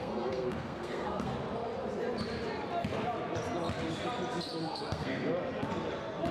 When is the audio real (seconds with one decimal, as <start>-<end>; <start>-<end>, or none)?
1.3-4.6; 5.3-6.3